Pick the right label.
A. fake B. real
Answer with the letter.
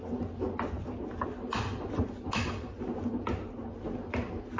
B